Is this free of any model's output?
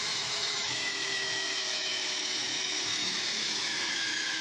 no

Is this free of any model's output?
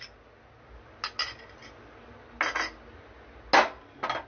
yes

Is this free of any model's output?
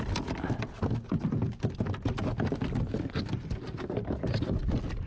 yes